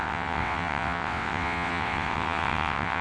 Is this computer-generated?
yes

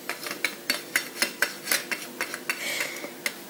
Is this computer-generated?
no